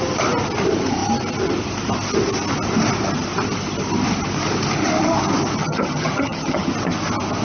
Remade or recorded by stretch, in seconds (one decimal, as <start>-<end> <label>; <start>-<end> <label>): 0.0-5.6 recorded; 5.6-6.7 remade; 6.7-7.4 recorded